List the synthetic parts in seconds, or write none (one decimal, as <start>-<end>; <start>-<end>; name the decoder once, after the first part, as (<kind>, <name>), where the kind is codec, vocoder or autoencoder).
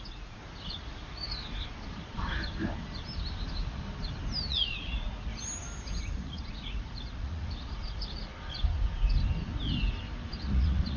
0.0-0.4 (vocoder, Vocos); 4.5-5.3; 6.0-8.3; 10.4-11.0